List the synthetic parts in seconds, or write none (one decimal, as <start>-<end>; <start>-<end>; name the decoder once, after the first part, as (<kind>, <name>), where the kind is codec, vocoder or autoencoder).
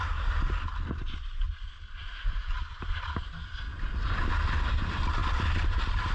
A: 2.0-2.6 (vocoder, BigVGAN v2); 5.2-6.1